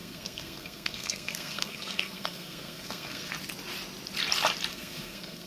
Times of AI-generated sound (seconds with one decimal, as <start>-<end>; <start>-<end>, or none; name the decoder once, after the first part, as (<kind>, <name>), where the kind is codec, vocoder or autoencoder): 0.0-3.3 (codec, SNAC); 4.7-5.5